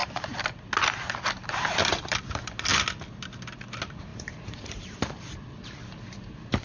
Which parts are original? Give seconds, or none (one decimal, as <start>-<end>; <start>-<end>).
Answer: 0.6-4.1; 5.8-6.6